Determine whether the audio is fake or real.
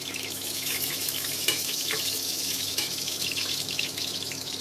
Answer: fake